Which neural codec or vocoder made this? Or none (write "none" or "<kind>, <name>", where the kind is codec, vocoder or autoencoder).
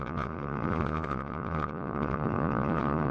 vocoder, Vocos